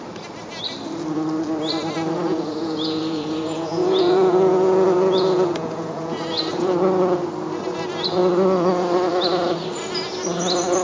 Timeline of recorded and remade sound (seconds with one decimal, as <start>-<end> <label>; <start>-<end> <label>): 0.0-2.3 recorded; 2.3-6.7 remade; 6.7-10.8 recorded